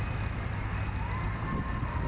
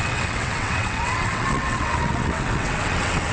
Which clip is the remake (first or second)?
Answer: second